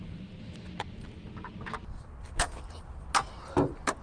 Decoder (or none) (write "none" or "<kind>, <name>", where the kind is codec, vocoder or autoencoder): none